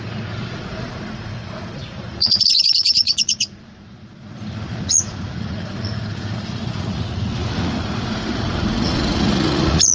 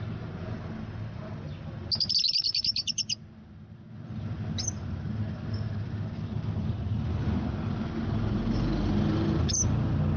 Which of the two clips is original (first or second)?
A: second